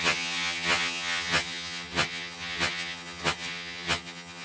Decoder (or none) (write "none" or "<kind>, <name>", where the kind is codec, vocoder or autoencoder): vocoder, HiFi-GAN